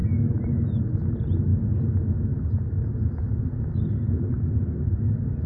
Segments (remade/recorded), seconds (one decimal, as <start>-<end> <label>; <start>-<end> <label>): 0.0-5.5 recorded